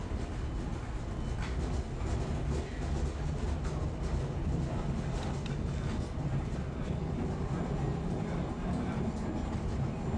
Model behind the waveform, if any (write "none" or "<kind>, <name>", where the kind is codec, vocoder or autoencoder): none